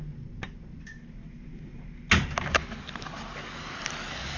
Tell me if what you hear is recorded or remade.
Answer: recorded